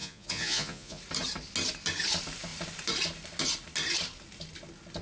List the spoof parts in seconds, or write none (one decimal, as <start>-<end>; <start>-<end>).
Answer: 0.0-1.0